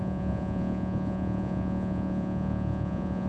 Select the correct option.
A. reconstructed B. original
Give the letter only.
A